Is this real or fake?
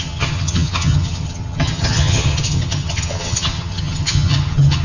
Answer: fake